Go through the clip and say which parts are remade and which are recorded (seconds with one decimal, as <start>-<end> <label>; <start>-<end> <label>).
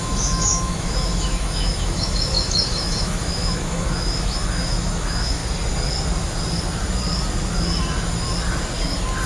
0.0-5.4 remade; 5.4-9.3 recorded